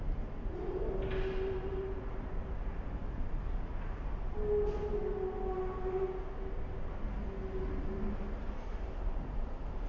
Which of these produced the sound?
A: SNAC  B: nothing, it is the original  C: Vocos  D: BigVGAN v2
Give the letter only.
B